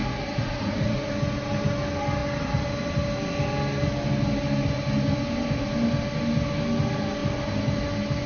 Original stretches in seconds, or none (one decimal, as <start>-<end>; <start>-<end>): 1.1-8.3